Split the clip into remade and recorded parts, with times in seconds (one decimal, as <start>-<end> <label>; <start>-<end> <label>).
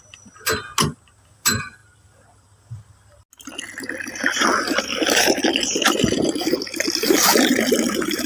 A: 0.0-7.3 recorded; 7.3-8.3 remade